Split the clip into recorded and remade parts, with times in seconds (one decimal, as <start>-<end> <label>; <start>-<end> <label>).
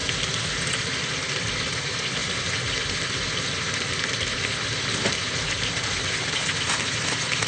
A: 0.0-7.5 recorded